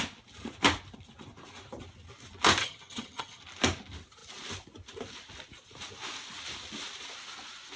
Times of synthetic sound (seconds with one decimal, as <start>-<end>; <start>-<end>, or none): 2.6-3.4